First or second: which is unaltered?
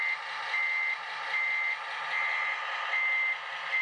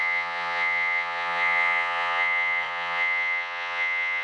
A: first